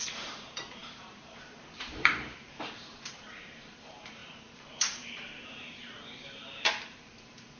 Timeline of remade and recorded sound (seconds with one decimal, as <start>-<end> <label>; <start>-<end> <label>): 0.0-7.6 remade